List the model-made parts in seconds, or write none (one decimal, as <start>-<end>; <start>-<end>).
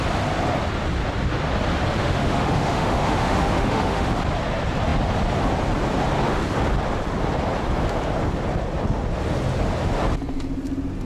2.0-4.1